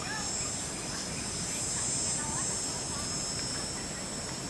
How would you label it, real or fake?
real